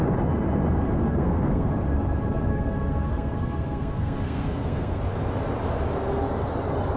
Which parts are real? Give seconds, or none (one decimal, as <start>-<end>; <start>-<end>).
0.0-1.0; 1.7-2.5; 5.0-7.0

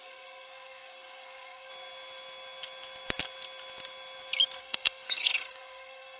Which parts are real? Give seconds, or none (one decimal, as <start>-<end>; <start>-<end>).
1.7-4.6

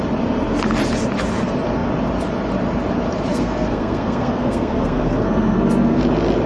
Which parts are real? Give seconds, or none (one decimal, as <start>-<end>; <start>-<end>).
0.0-3.3; 6.0-6.5

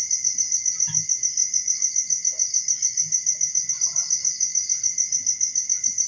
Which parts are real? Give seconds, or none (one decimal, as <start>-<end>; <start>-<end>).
0.0-6.1

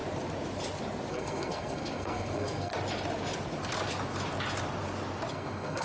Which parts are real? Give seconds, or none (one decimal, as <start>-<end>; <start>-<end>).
0.0-1.1; 2.7-5.3

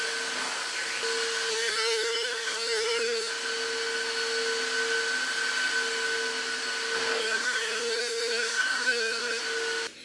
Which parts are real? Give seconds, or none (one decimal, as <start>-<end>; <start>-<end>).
0.0-1.5; 3.3-7.2; 9.4-10.0